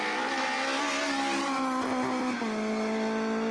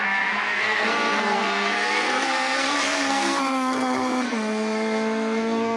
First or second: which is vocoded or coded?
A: second